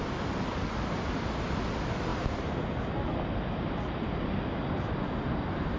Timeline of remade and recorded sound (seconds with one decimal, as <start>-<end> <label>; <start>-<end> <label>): 0.0-5.8 recorded